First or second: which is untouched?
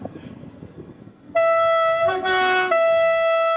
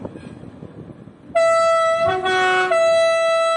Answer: second